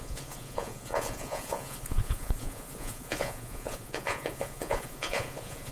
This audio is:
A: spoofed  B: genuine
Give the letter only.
A